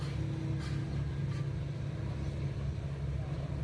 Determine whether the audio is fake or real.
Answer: real